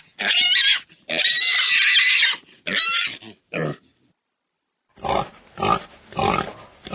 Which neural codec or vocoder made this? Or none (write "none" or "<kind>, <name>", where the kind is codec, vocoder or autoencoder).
none